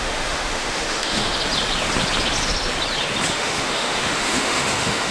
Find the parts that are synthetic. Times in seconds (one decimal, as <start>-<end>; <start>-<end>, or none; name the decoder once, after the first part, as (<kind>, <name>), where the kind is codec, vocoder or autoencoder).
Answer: 0.0-1.3 (autoencoder, DAC-VAE); 3.3-5.1